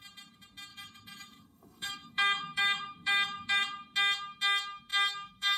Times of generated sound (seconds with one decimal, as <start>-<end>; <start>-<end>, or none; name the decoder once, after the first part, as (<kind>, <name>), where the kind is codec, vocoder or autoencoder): 0.7-3.6 (autoencoder, DAC-VAE); 4.9-5.6